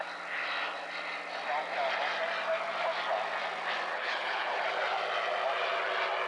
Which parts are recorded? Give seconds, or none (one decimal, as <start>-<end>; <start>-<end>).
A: 0.0-3.9; 4.6-6.3